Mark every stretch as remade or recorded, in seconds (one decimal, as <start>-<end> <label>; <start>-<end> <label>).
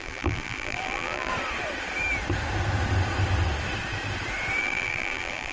0.0-1.3 remade; 1.3-4.6 recorded; 4.6-5.5 remade